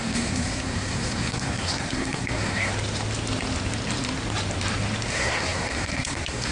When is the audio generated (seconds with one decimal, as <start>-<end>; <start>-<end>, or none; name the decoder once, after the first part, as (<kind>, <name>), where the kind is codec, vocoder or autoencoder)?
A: 0.0-2.7 (codec, SNAC); 5.1-6.5